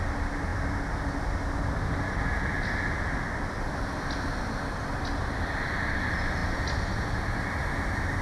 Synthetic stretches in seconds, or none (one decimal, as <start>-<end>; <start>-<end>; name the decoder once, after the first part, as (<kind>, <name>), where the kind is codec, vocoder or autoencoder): none